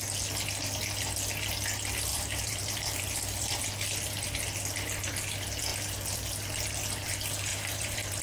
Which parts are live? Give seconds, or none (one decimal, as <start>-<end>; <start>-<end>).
0.0-2.1; 3.6-7.5